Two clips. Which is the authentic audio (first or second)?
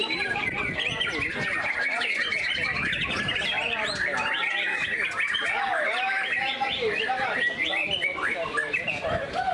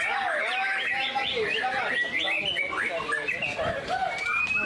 second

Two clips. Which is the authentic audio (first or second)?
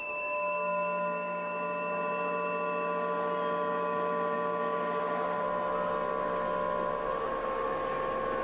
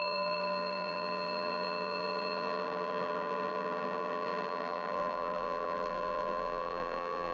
first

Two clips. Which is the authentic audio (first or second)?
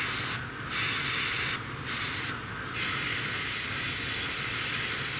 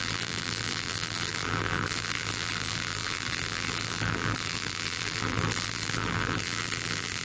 first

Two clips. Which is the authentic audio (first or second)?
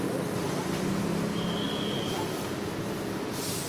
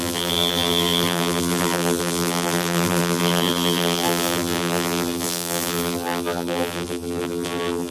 first